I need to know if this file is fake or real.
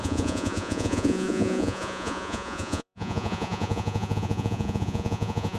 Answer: fake